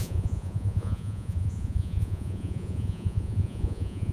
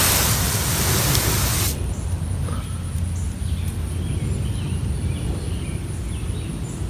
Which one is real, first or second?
second